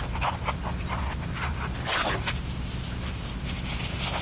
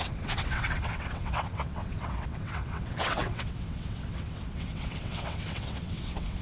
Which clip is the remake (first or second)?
second